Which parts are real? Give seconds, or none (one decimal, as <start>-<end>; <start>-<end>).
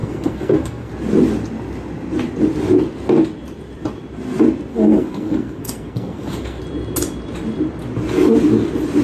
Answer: 0.9-4.7; 6.6-9.0